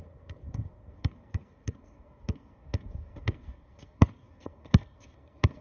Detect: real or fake fake